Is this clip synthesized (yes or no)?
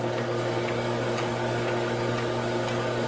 yes